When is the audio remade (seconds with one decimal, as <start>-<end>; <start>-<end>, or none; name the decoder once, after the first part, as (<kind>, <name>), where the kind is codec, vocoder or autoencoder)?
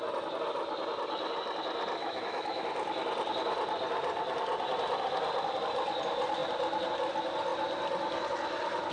2.0-2.7 (autoencoder, DAC-VAE)